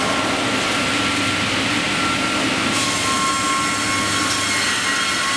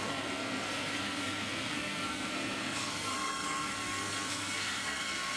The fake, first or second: second